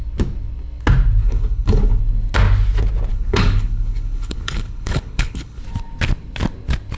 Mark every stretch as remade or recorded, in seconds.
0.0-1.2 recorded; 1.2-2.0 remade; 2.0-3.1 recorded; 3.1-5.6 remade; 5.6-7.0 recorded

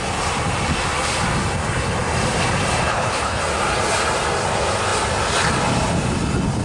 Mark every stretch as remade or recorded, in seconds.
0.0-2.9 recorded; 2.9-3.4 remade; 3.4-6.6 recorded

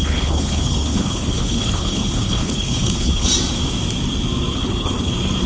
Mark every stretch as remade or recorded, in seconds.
0.0-3.3 remade; 3.3-4.5 recorded; 4.5-5.1 remade; 5.1-5.5 recorded

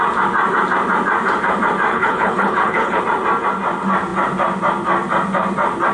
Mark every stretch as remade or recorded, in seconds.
0.0-1.9 recorded; 1.9-3.0 remade; 3.0-5.9 recorded

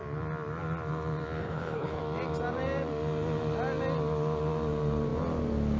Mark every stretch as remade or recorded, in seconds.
0.0-1.4 recorded; 1.4-2.0 remade; 2.0-5.8 recorded

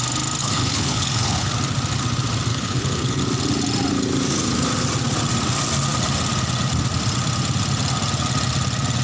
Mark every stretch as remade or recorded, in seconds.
0.0-0.4 recorded; 0.4-1.5 remade; 1.5-2.5 recorded; 2.5-3.2 remade; 3.2-9.0 recorded